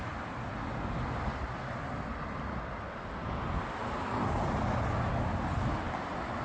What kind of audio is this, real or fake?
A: real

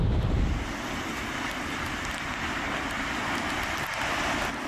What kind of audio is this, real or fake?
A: real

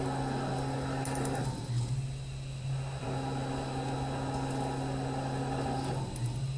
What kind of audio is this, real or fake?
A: real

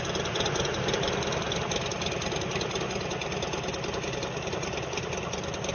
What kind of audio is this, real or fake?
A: real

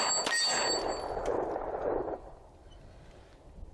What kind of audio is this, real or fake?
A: real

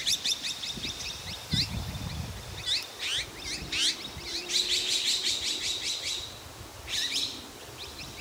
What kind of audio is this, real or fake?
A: real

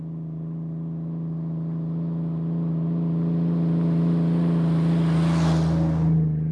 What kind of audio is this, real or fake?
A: real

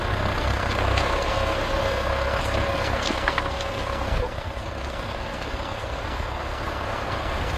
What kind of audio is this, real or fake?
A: fake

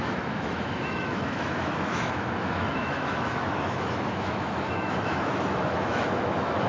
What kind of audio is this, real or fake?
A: fake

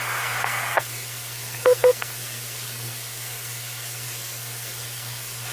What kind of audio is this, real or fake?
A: fake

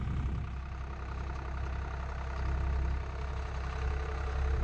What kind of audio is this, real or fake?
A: real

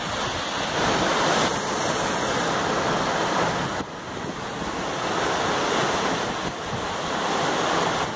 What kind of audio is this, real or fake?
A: real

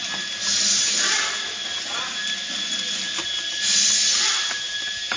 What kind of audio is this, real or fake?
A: real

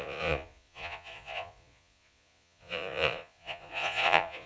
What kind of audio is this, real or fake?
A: fake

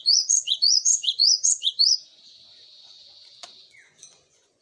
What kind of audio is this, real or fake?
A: fake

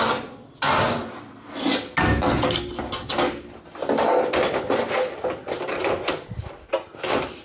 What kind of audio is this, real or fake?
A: real